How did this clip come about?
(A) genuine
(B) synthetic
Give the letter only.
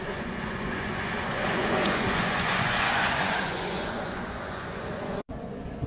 B